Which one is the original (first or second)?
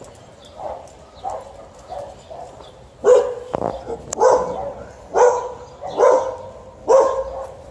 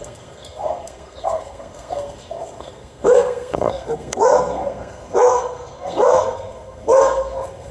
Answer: first